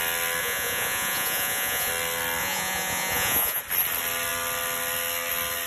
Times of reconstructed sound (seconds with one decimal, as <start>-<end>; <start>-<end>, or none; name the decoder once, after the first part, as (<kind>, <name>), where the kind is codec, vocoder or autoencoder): 0.4-1.9 (vocoder, Vocos); 2.4-3.6